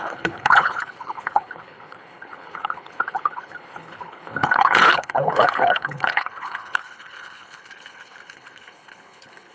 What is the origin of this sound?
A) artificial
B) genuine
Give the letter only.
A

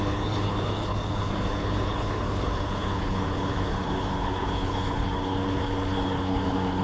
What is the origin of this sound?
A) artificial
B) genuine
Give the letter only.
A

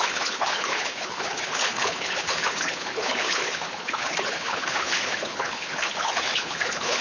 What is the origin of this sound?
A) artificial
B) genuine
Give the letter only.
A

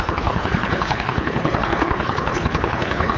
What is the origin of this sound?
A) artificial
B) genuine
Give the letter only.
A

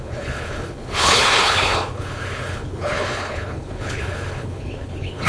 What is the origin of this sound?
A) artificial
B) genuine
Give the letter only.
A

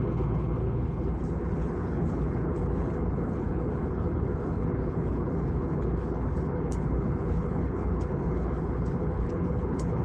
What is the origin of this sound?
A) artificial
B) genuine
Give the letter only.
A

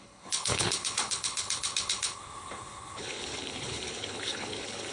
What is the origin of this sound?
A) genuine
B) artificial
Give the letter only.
B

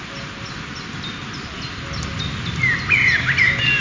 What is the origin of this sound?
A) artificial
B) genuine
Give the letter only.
B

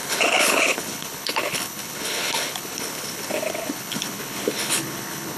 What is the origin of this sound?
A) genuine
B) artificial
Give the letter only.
B